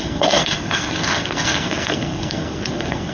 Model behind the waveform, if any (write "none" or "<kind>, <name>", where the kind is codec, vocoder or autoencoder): codec, SNAC